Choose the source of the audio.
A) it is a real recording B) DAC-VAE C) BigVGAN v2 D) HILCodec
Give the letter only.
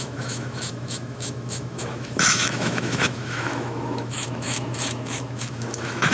B